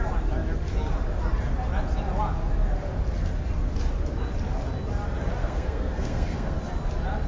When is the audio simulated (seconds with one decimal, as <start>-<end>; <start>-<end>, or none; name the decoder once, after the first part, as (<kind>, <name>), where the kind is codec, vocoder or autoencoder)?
5.4-6.6 (codec, SNAC)